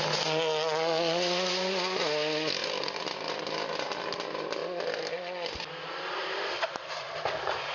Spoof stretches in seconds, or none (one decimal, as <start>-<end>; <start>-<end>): none

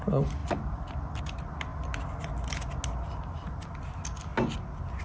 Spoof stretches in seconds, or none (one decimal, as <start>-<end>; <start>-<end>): 0.4-1.2; 1.7-2.3

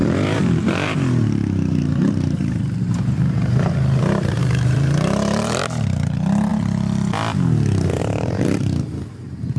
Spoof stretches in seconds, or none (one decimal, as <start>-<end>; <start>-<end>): 0.0-6.5; 8.0-9.6

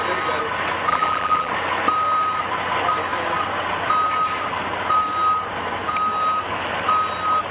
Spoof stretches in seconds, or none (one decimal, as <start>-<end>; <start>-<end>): 0.9-1.5

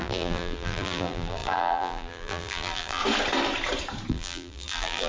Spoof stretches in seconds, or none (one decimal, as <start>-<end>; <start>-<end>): 0.0-3.0; 4.1-5.1

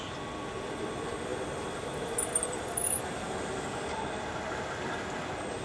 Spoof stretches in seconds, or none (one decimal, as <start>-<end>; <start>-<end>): none

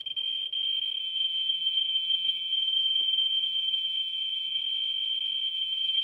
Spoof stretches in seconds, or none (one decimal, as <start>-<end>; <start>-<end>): 1.0-4.6; 5.5-6.0